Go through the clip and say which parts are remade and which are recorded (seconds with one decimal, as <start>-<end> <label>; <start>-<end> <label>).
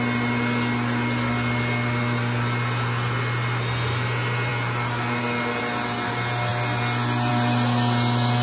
0.0-8.4 recorded